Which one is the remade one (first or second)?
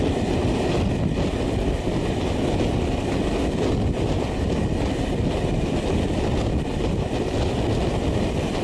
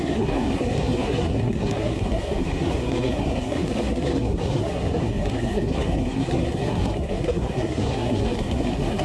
second